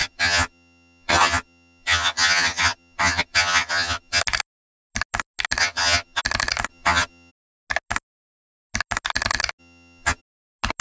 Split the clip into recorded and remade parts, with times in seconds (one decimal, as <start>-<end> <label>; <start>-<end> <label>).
0.0-4.2 remade; 4.2-5.6 recorded; 5.6-6.2 remade; 6.2-6.7 recorded; 6.7-7.3 remade; 7.3-9.6 recorded; 9.6-10.2 remade; 10.2-10.8 recorded